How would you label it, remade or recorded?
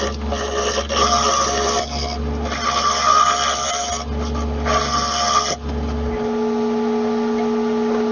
recorded